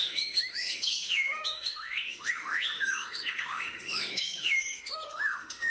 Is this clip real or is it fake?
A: fake